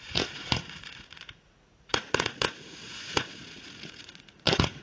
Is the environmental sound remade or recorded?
remade